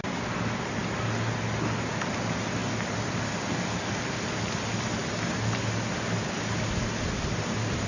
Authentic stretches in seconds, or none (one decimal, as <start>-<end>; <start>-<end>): 0.0-7.9